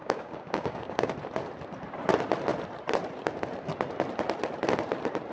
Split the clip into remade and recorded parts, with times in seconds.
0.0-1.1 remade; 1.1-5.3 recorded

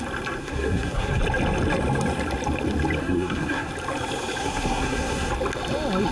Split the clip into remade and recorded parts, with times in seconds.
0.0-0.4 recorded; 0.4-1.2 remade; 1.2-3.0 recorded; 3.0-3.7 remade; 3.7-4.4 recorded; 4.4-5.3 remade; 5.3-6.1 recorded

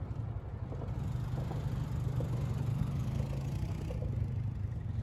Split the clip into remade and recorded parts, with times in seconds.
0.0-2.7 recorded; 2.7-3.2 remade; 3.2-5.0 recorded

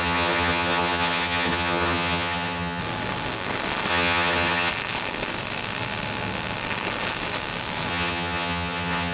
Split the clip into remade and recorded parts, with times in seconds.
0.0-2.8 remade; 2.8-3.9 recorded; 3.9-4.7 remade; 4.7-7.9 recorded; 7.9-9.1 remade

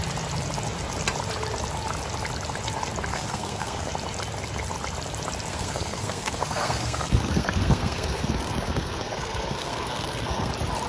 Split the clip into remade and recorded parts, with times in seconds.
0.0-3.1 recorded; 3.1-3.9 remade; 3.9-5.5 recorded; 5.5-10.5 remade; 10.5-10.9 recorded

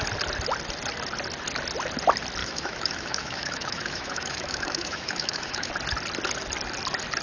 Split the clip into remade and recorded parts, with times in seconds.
0.0-2.4 recorded; 2.4-5.7 remade; 5.7-7.2 recorded